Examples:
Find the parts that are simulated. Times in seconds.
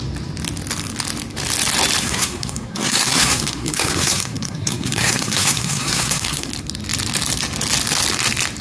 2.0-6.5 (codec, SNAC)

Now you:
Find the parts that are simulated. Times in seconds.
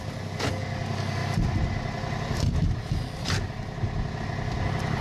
none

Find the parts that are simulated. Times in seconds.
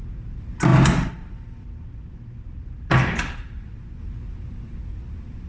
none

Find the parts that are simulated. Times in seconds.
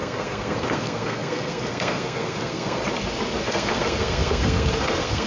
0.0-2.8 (codec, SNAC); 3.4-5.3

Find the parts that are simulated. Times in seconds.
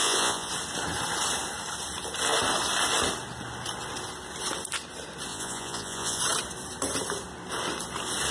0.0-0.5 (vocoder, Vocos); 5.3-6.2